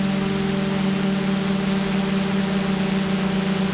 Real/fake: real